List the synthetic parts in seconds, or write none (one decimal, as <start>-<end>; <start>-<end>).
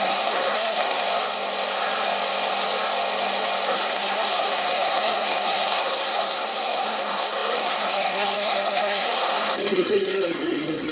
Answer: 0.0-1.0; 3.7-10.9